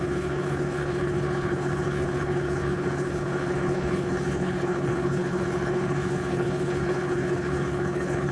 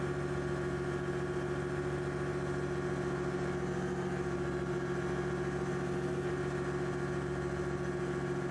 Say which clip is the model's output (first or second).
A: first